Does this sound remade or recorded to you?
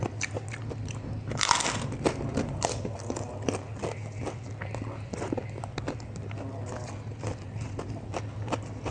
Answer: recorded